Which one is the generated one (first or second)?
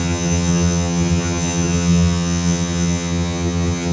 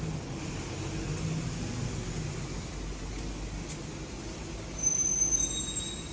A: first